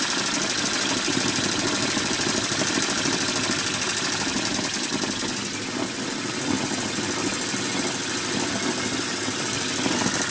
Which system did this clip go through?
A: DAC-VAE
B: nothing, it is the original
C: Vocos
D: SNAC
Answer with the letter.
B